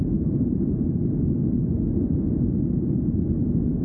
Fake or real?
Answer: real